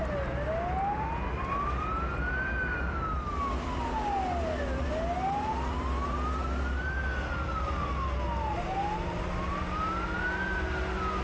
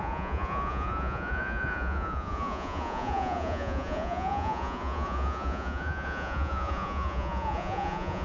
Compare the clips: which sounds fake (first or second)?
second